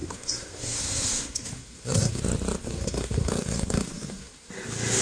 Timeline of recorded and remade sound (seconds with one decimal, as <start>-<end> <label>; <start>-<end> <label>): 0.0-2.2 remade; 2.2-2.6 recorded; 2.6-4.5 remade; 4.5-5.0 recorded